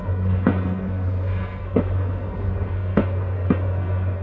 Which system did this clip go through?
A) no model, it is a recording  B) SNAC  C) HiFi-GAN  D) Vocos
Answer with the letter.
B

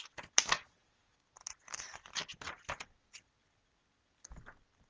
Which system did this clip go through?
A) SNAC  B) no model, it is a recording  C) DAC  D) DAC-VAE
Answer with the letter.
B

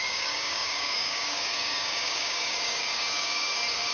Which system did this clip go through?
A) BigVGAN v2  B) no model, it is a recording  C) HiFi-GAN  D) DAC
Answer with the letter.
D